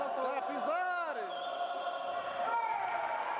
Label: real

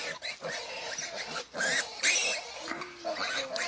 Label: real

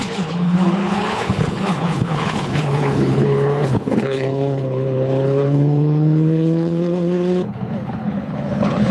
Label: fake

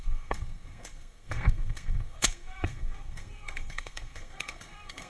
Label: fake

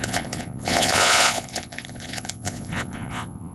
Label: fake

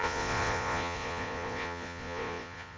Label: fake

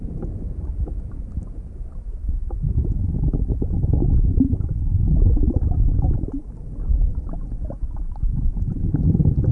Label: real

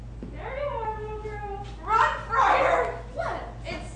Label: real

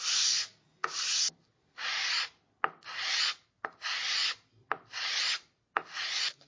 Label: real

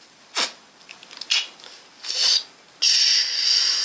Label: real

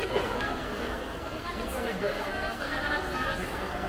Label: fake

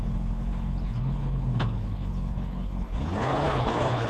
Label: fake